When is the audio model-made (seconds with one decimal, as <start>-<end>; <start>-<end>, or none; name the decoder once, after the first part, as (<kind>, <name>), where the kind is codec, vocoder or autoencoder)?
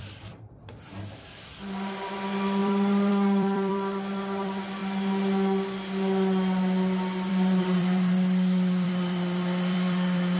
0.0-4.8 (vocoder, BigVGAN v2); 7.3-10.4